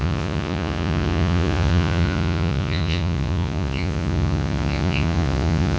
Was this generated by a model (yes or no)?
yes